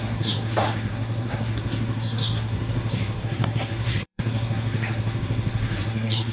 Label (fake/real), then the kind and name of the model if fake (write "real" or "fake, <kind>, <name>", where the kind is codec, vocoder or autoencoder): fake, codec, SNAC